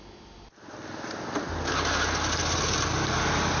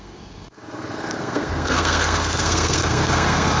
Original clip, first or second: first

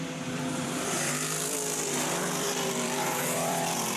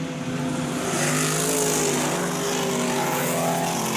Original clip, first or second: second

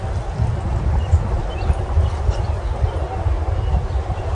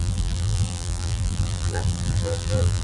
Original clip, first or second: first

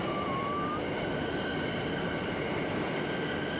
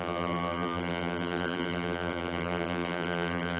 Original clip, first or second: first